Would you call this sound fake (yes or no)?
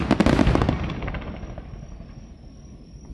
no